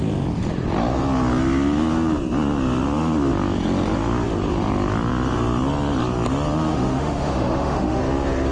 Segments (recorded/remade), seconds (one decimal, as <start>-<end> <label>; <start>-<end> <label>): 0.0-6.7 recorded; 6.7-8.0 remade; 8.0-8.5 recorded